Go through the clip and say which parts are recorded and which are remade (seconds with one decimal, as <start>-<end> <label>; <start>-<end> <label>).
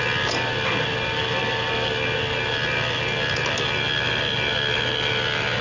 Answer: 0.0-5.6 recorded